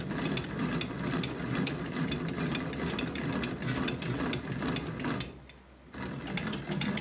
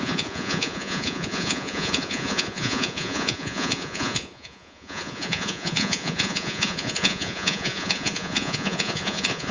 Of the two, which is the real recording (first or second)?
first